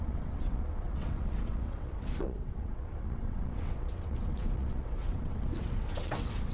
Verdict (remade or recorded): remade